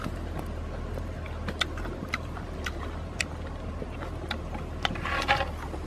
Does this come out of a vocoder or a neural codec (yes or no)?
no